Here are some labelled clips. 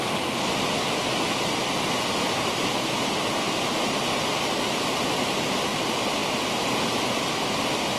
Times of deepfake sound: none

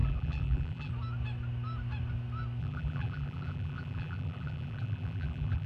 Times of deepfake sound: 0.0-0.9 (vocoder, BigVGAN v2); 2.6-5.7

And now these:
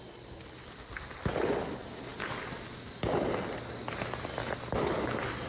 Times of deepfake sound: 0.6-1.7 (vocoder, BigVGAN v2)

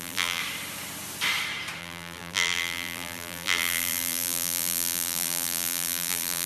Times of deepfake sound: 0.0-0.4 (vocoder, BigVGAN v2); 1.8-6.5

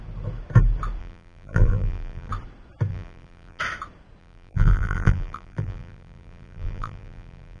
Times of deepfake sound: 1.0-2.3 (vocoder, BigVGAN v2); 2.9-3.6; 4.2-7.6